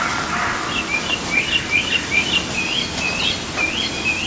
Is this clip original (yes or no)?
yes